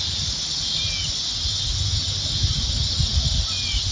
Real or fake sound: real